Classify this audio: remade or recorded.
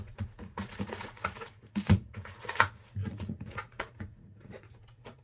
remade